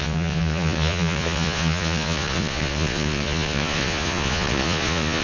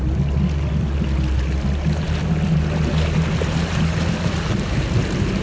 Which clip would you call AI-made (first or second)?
first